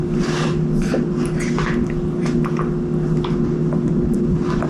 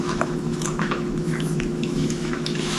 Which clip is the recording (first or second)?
first